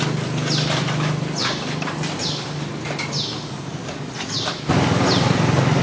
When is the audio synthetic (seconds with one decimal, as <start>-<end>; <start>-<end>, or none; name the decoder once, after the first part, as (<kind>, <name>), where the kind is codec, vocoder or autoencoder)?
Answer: 3.8-4.6 (vocoder, BigVGAN v2)